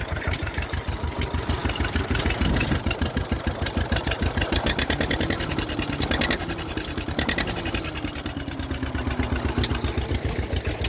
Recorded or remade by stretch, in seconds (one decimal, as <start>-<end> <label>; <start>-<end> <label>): 0.0-10.9 recorded